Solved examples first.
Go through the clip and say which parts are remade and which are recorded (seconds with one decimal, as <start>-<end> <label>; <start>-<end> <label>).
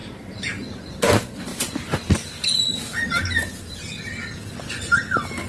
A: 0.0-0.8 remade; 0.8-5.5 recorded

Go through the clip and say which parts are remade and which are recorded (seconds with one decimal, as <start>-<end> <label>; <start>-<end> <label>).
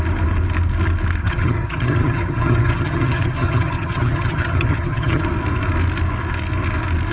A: 0.0-1.2 recorded; 1.2-5.2 remade; 5.2-7.1 recorded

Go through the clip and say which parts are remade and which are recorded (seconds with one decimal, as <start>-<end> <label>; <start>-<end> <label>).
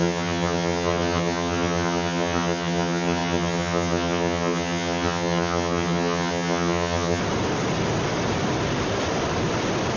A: 0.0-7.2 remade; 7.2-10.0 recorded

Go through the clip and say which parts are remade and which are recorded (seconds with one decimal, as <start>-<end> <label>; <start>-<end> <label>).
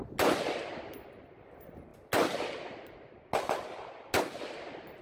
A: 0.0-5.0 recorded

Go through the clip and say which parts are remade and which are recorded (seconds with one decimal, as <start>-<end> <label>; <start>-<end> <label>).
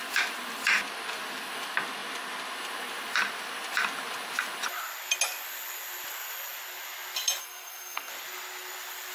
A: 0.0-7.4 recorded; 7.4-8.1 remade; 8.1-9.1 recorded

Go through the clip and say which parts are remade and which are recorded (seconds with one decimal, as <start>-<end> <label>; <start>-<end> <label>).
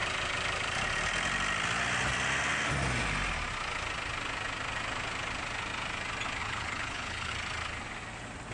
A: 0.0-6.4 recorded; 6.4-7.3 remade; 7.3-8.5 recorded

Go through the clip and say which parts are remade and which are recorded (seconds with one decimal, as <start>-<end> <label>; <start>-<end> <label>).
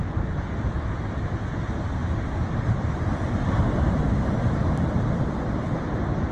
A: 0.0-6.3 recorded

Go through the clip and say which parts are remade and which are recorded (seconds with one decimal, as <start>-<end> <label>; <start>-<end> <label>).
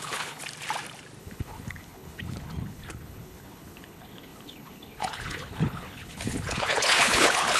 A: 0.0-0.4 remade; 0.4-1.2 recorded; 1.2-7.6 remade